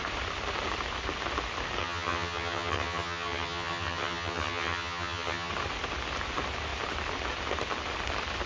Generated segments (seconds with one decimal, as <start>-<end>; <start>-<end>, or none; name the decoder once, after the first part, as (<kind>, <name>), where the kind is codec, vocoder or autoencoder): 1.8-5.5 (vocoder, HiFi-GAN)